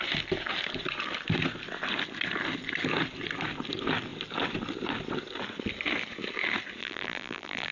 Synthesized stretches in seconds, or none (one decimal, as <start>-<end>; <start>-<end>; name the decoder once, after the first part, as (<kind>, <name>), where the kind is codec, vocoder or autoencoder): 6.8-7.7 (vocoder, BigVGAN v2)